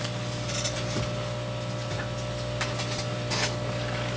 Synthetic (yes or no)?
no